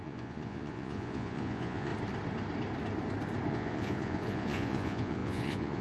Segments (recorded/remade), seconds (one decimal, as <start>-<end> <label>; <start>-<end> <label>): 0.0-1.9 remade; 1.9-3.5 recorded; 3.5-5.8 remade